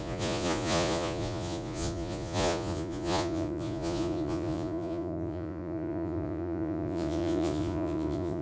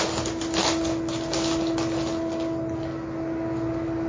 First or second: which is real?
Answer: second